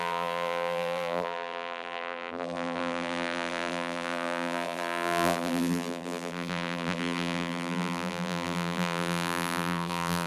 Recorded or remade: remade